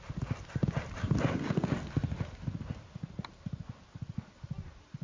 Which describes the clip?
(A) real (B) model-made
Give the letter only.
A